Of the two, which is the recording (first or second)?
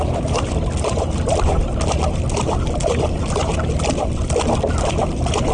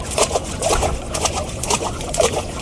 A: first